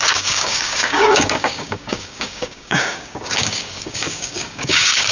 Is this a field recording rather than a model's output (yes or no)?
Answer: no